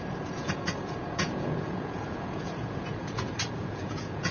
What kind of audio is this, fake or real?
fake